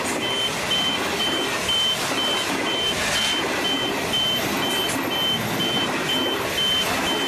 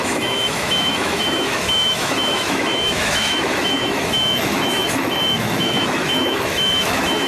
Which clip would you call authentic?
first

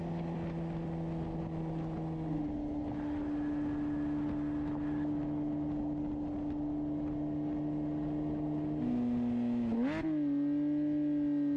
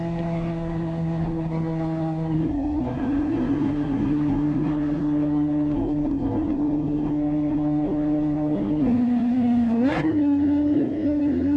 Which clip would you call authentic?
first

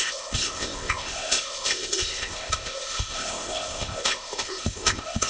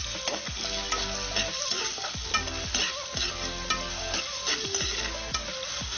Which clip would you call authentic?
second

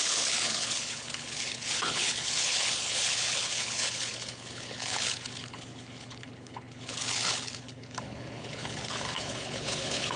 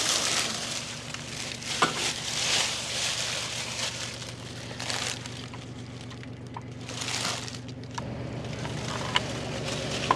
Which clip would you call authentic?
second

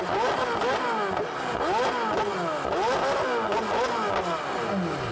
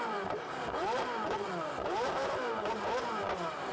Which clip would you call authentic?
first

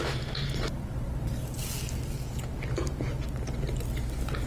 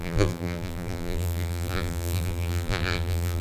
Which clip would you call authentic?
first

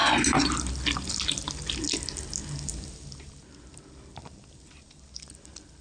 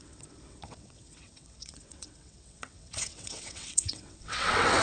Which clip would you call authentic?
first